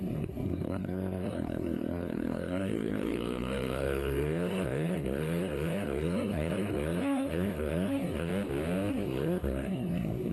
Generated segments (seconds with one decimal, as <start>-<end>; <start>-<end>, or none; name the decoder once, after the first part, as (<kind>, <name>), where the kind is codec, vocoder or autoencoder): 0.0-8.3 (codec, SNAC); 8.9-10.3